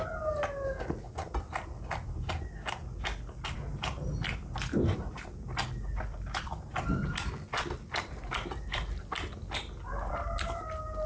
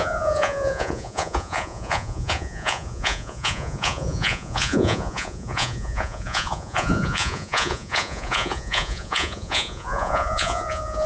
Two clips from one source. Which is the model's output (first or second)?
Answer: second